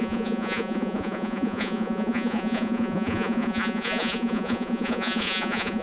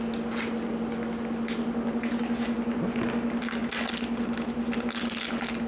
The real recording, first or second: second